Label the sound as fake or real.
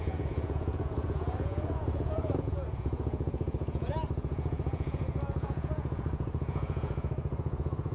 fake